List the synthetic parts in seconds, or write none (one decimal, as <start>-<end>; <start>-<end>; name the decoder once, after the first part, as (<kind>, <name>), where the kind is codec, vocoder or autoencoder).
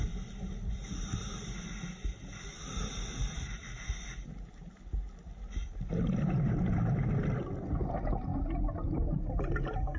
none